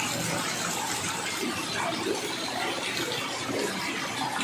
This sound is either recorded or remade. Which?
remade